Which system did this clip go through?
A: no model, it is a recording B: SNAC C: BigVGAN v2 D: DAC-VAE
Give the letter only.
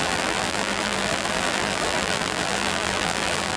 C